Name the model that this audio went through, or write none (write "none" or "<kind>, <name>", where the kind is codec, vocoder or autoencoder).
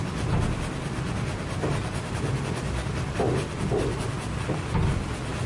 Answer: none